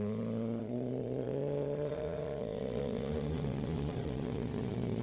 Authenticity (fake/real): fake